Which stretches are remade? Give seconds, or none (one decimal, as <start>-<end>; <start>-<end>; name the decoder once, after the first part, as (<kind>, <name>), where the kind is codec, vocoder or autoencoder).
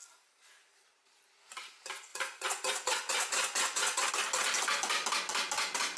2.1-4.1 (vocoder, Vocos)